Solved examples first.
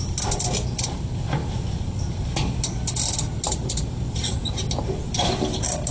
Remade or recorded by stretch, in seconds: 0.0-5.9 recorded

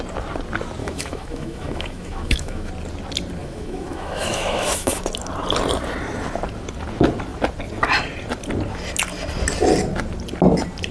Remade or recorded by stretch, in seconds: 0.0-0.8 recorded; 0.8-2.7 remade; 2.7-3.4 recorded; 3.4-5.0 remade; 5.0-10.9 recorded

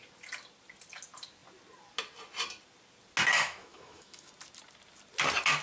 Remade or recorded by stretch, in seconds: 0.0-3.3 recorded; 3.3-4.3 remade; 4.3-5.6 recorded

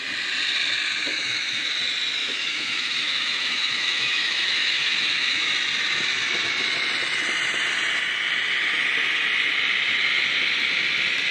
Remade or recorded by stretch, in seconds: 0.0-1.1 recorded; 1.1-1.7 remade; 1.7-2.2 recorded; 2.2-5.5 remade; 5.5-11.3 recorded